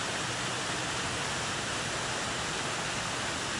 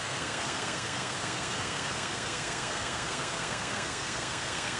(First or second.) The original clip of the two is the first